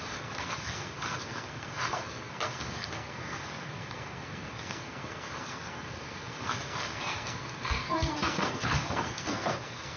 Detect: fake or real fake